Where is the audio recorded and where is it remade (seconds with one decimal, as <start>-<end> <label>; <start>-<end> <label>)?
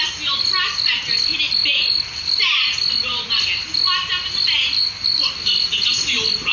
0.0-6.5 recorded